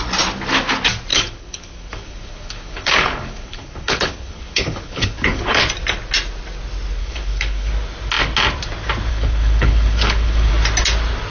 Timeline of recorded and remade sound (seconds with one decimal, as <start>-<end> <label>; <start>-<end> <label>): 0.0-1.1 recorded; 1.1-5.6 remade; 5.6-7.0 recorded; 7.0-7.7 remade; 7.7-9.1 recorded; 9.1-10.5 remade; 10.5-11.3 recorded